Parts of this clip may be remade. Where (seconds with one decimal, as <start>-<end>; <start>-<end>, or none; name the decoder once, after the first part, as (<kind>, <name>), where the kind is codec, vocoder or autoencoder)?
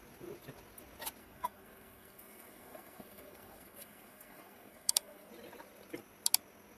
1.2-5.3 (codec, SNAC)